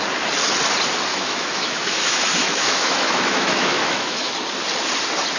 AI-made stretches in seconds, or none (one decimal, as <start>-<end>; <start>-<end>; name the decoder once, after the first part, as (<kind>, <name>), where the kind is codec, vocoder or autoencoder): 1.1-4.3 (autoencoder, DAC-VAE)